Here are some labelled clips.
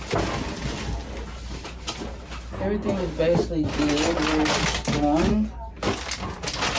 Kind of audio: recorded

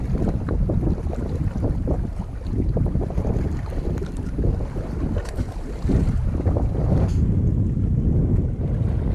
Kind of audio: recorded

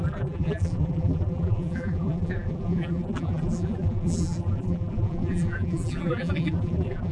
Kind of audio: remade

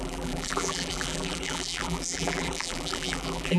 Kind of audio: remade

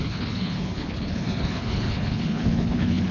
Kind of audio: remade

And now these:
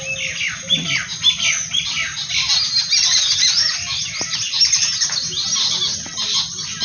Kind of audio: recorded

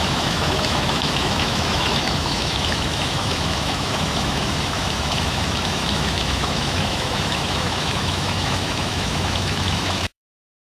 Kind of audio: remade